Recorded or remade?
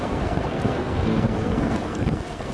remade